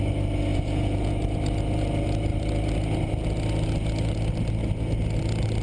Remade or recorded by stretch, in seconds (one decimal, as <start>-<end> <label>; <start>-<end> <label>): 0.0-0.5 recorded; 0.5-1.1 remade; 1.1-5.6 recorded